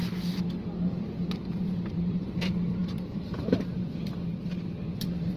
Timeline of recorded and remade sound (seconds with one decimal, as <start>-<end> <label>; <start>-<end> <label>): 0.0-1.5 recorded; 1.5-5.4 remade